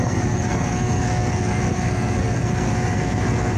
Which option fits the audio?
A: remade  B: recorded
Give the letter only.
A